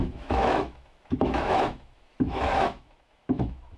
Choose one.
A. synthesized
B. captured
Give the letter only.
A